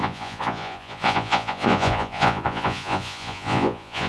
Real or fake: fake